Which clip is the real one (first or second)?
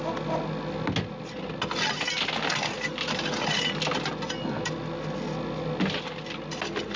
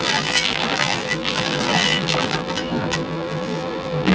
first